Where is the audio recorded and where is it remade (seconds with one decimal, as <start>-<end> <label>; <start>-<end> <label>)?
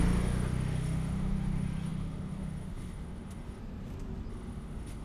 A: 0.0-3.6 remade; 3.6-4.3 recorded; 4.3-5.0 remade